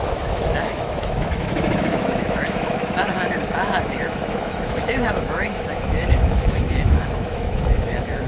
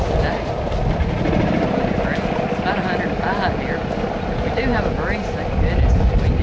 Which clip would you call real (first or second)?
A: second